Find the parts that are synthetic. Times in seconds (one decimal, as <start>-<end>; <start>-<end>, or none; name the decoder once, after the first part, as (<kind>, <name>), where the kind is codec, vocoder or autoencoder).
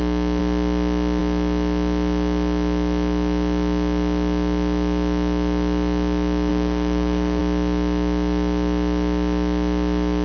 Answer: 6.5-7.4 (codec, DAC)